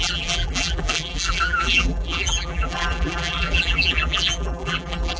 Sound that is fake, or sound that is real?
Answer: fake